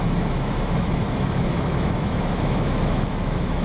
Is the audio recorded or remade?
remade